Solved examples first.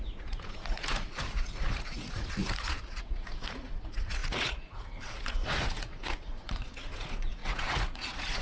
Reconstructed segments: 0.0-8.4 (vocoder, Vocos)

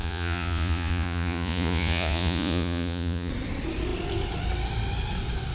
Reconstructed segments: 0.0-3.3 (vocoder, Vocos)

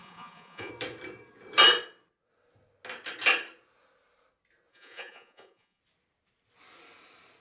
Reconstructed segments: 0.0-0.7 (vocoder, Vocos); 4.7-5.8

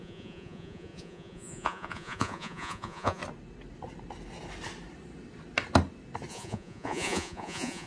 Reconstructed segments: 0.0-3.2 (vocoder, Vocos); 6.3-7.9

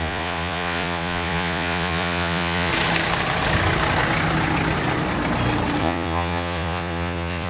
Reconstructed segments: 0.0-2.7 (vocoder, Vocos); 5.8-7.5

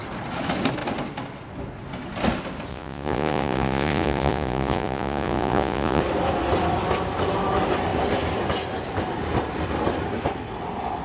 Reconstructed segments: 2.7-6.0 (vocoder, Vocos)

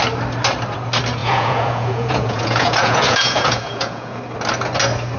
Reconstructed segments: 1.2-4.2 (vocoder, Vocos)

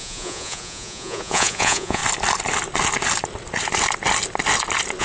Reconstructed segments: 0.0-2.0 (vocoder, Vocos)